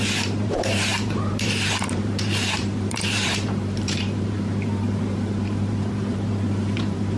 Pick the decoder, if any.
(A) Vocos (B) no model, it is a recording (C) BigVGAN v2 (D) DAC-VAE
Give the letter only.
C